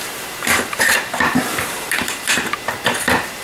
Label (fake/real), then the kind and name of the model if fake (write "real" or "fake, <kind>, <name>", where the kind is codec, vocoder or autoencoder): fake, vocoder, BigVGAN v2